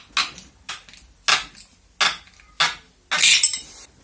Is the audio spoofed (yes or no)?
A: no